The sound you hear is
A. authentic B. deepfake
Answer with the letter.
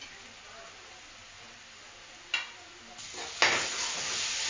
A